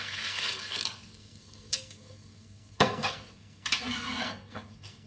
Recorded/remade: remade